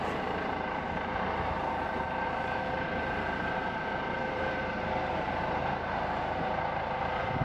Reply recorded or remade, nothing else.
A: remade